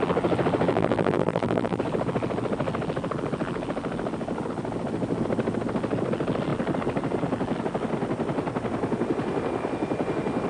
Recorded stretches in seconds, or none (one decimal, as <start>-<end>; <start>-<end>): 0.0-0.7; 1.8-10.5